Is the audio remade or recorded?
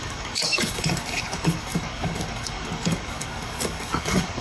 remade